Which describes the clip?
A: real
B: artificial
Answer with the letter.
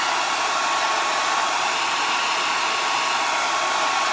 A